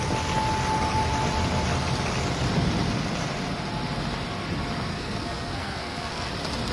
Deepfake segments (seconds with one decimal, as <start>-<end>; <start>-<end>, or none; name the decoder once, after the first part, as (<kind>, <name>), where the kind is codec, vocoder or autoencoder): 4.9-6.3 (codec, SNAC)

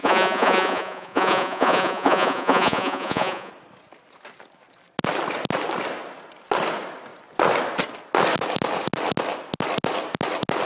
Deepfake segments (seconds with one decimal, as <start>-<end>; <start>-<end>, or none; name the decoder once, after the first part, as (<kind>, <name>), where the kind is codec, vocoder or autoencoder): 0.0-3.5 (vocoder, Vocos)